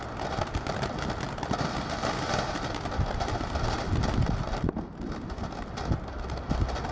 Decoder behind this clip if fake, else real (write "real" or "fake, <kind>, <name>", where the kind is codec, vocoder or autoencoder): real